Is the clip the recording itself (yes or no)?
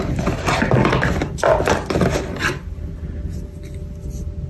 yes